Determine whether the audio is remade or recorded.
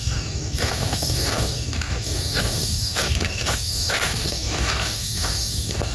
remade